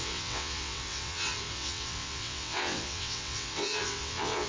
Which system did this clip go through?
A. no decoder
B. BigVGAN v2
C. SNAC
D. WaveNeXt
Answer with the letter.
D